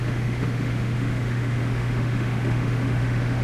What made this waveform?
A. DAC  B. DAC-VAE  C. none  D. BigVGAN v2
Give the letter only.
B